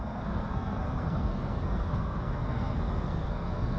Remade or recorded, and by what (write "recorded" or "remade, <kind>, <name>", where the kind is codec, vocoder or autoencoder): remade, codec, SNAC